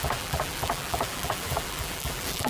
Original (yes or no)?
no